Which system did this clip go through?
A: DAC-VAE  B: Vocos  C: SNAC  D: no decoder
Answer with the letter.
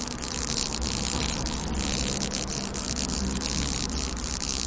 D